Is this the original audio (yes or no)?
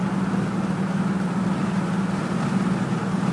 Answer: yes